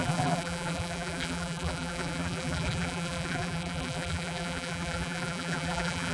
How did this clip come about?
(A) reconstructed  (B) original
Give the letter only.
A